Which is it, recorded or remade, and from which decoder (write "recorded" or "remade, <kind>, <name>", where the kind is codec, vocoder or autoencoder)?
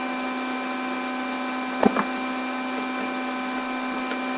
recorded